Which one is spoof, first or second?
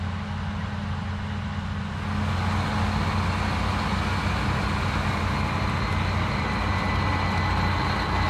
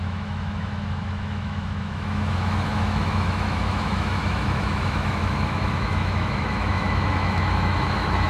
second